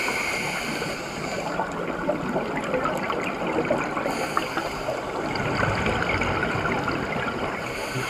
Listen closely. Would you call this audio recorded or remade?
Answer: recorded